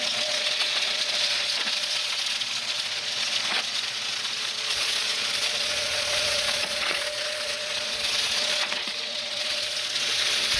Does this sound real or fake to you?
fake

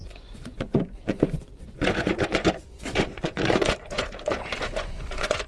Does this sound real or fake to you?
fake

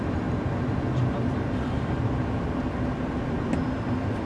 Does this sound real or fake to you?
real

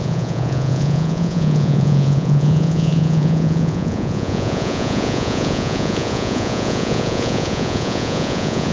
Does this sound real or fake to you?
fake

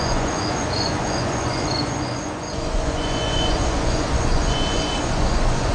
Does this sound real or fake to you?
fake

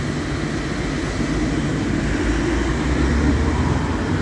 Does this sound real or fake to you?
real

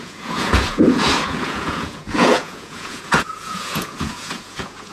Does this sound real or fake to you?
fake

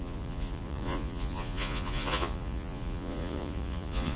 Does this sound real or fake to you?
fake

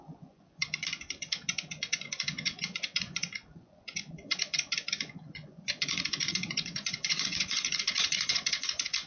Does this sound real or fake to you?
fake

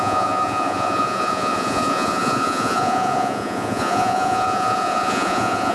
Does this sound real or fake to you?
fake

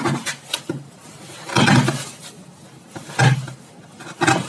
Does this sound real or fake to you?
real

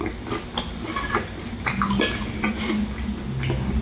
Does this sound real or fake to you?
real